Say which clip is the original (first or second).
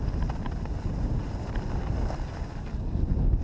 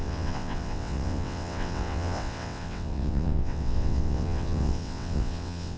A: first